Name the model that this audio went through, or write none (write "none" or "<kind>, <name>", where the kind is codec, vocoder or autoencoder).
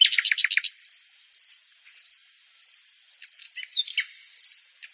none